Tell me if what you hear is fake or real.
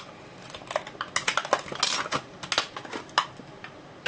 real